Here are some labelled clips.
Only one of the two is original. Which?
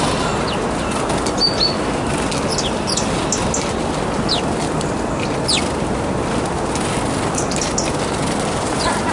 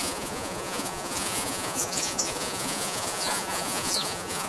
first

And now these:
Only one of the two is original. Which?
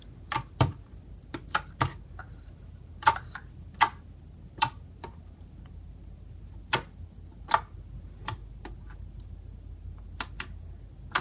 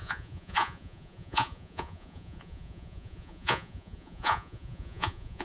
first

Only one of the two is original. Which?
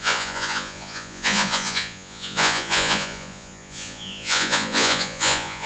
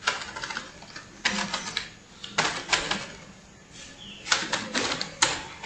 second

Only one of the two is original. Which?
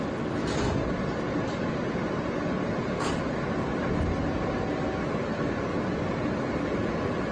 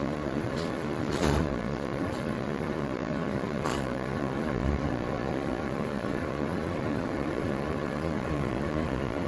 first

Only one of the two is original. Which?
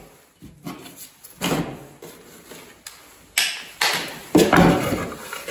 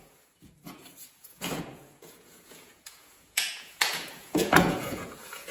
first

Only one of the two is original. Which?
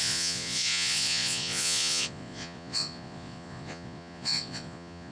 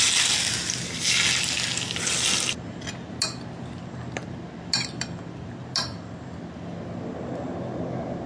second